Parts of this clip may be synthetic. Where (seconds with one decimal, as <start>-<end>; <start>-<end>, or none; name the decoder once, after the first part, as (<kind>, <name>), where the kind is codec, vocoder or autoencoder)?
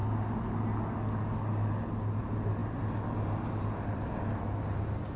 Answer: none